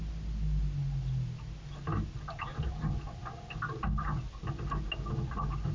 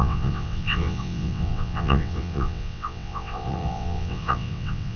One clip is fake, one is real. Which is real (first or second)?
first